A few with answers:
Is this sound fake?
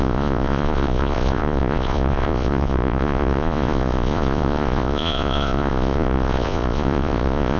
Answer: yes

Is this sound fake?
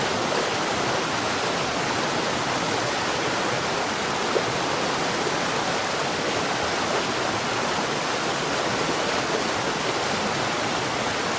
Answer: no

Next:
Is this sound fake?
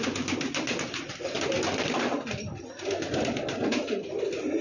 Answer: no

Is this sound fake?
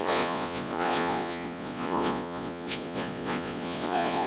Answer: yes